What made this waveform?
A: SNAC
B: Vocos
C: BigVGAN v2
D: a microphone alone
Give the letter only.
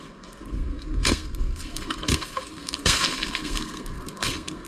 A